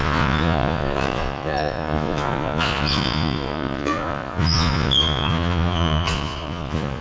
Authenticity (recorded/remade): remade